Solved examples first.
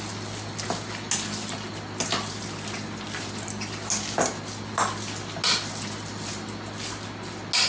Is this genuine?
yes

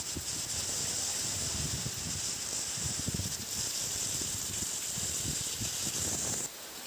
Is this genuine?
yes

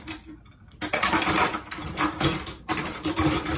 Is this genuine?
yes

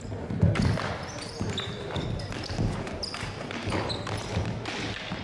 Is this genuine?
yes